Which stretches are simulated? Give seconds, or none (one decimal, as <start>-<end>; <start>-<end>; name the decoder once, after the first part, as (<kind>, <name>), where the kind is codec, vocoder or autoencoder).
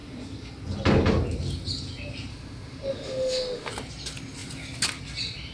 2.3-3.7 (autoencoder, DAC-VAE)